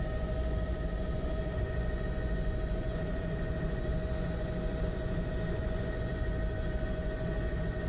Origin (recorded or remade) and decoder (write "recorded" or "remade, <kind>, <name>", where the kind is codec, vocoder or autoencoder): remade, vocoder, Vocos